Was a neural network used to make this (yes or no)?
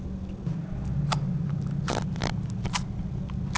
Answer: no